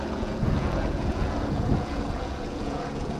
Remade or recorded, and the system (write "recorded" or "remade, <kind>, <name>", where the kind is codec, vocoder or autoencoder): remade, vocoder, Vocos